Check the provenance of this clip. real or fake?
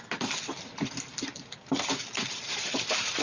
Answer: fake